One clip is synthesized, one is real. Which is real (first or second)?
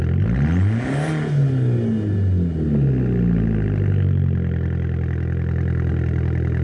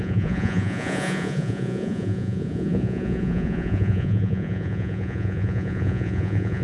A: first